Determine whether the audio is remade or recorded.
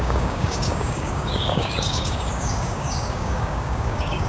remade